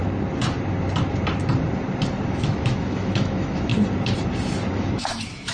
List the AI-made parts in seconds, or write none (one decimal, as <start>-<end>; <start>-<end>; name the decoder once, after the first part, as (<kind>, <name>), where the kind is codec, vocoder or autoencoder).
2.3-3.7 (autoencoder, DAC-VAE); 4.7-5.5